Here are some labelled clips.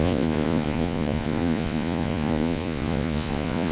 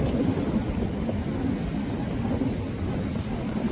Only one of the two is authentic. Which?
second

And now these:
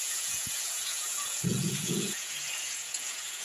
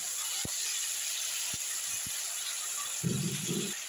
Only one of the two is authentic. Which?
second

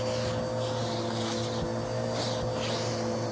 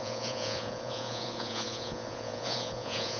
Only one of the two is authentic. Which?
first